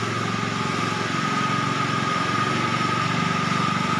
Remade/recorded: recorded